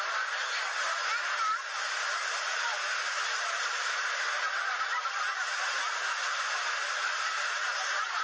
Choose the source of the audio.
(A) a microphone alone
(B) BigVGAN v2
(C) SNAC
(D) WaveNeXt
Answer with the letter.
A